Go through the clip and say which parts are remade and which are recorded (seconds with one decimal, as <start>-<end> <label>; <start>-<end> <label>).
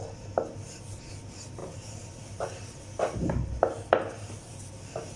0.0-1.6 recorded; 1.6-4.7 remade; 4.7-5.2 recorded